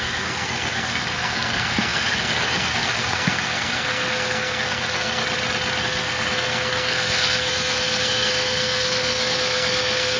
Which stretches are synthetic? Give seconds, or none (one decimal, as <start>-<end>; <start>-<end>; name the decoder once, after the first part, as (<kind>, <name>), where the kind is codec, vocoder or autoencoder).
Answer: 0.0-5.2 (codec, SNAC); 5.8-10.2